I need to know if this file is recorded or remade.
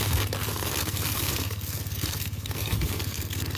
remade